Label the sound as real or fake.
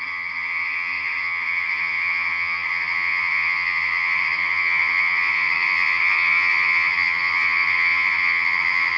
fake